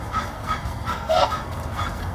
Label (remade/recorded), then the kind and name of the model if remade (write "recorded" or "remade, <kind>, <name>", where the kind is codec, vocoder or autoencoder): remade, codec, SNAC